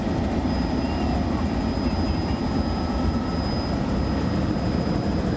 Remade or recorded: recorded